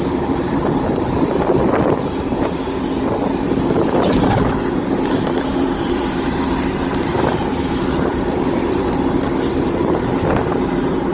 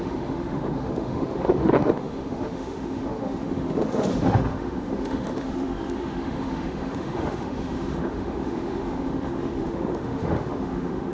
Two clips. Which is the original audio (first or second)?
first